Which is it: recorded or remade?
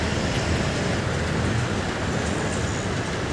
recorded